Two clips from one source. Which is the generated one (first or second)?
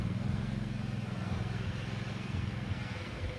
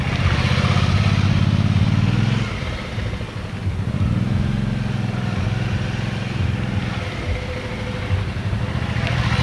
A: first